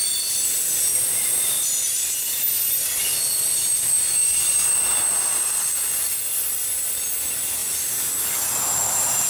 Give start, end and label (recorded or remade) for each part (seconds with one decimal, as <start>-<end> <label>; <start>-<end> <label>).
0.0-0.5 recorded; 0.5-1.7 remade; 1.7-9.3 recorded